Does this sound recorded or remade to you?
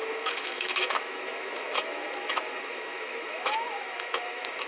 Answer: remade